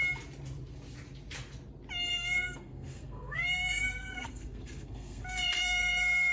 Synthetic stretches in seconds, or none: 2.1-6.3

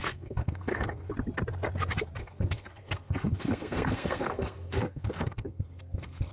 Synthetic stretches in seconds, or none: 0.0-1.1; 2.2-6.3

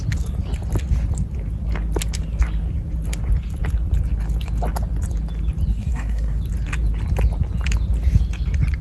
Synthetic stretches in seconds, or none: 5.7-6.4